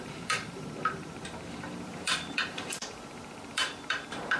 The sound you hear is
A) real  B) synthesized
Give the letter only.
B